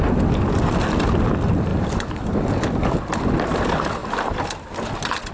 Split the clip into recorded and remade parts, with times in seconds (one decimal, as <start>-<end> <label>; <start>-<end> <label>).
0.0-1.7 recorded; 1.7-2.5 remade; 2.5-4.0 recorded; 4.0-4.6 remade; 4.6-5.3 recorded